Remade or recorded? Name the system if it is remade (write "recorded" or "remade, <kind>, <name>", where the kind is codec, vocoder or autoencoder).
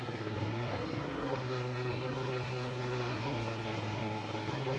remade, codec, SNAC